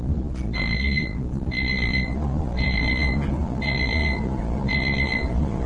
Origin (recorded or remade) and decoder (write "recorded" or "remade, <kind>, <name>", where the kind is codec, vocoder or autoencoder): remade, vocoder, Vocos